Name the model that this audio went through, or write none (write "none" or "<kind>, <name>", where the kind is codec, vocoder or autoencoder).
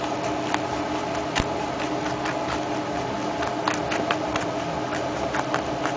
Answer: vocoder, BigVGAN v2